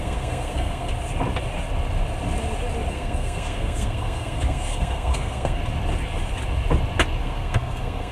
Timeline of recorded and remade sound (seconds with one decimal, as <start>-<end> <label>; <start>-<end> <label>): 0.0-0.9 remade; 0.9-2.9 recorded; 2.9-5.6 remade; 5.6-7.2 recorded; 7.2-8.1 remade